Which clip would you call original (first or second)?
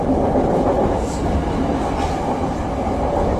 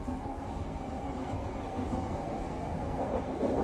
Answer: first